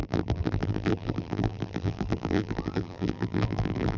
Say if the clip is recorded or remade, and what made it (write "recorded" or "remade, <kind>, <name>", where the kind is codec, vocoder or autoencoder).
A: remade, vocoder, BigVGAN v2